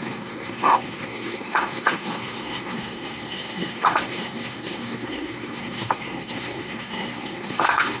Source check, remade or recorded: remade